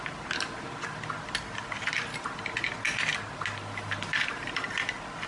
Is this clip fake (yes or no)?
no